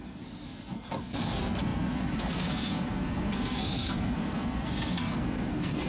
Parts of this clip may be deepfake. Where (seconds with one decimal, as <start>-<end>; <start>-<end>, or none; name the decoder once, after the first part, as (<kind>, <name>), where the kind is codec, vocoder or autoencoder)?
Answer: 0.0-5.9 (codec, SNAC)